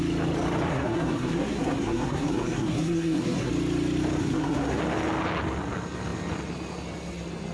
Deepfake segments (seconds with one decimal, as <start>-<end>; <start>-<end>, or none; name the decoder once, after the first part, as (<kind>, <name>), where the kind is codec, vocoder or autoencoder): 0.7-3.5 (codec, SNAC); 4.2-4.8